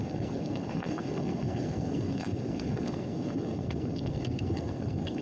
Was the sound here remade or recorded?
remade